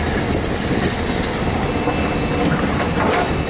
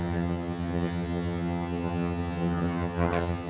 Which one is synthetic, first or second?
second